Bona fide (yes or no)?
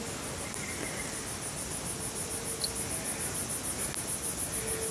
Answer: yes